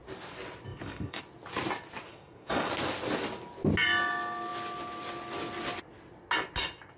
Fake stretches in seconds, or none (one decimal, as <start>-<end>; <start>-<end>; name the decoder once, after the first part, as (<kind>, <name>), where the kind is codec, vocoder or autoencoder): 0.7-1.2 (codec, DAC); 2.1-2.7